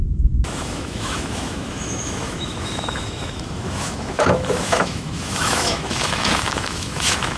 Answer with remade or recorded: remade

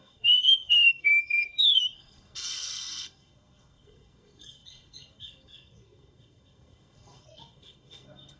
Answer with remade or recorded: remade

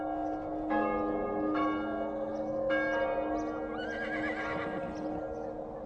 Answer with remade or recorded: recorded